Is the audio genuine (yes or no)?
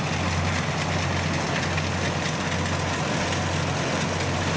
yes